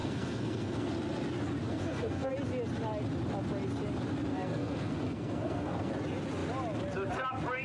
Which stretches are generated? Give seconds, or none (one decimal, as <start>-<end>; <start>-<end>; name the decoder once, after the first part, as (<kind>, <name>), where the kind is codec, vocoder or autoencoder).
0.0-0.9 (codec, SNAC); 1.6-2.3; 4.3-5.9